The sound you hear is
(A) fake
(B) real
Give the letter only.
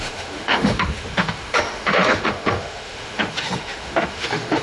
A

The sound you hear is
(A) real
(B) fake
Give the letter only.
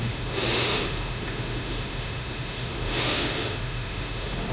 B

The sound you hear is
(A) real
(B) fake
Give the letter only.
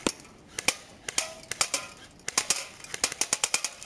A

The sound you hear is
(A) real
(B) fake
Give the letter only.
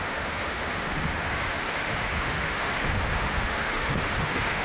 B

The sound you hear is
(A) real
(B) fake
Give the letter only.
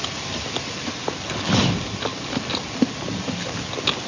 A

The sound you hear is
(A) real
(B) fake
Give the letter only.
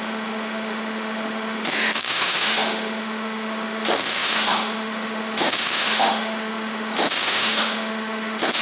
B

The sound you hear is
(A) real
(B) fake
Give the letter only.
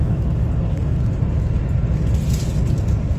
A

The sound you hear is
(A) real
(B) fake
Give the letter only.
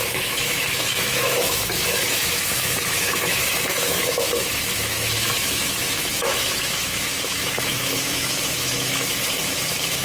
B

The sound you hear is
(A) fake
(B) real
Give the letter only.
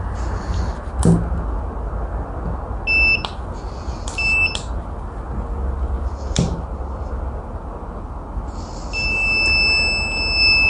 B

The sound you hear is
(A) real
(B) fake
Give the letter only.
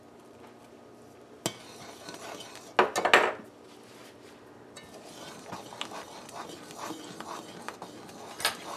A